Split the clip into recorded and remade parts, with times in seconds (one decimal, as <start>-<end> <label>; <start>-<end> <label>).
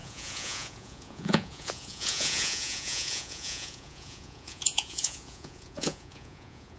0.0-6.8 remade